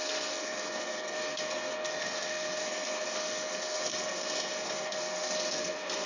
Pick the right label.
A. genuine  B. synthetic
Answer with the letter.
B